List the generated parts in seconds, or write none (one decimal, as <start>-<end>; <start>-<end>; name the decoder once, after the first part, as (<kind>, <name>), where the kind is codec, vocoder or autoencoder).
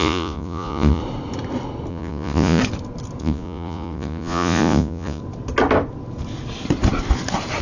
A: 0.0-1.0 (vocoder, Vocos); 1.9-2.6; 3.2-5.2